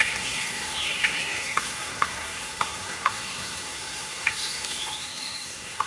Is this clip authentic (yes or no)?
no